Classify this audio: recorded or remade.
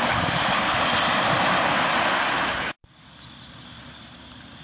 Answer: recorded